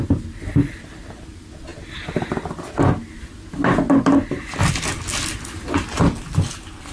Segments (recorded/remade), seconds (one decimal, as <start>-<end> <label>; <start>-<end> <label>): 0.0-6.9 recorded